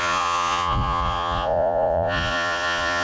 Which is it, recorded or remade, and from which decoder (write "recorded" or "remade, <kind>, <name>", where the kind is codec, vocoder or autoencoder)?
remade, vocoder, Vocos